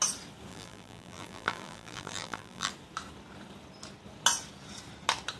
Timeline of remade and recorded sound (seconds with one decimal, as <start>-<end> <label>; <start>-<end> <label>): 0.0-0.5 recorded; 0.5-2.7 remade; 2.7-5.4 recorded